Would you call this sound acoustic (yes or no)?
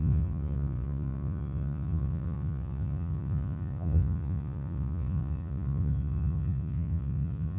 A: no